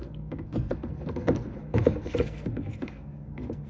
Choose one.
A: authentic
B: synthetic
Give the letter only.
B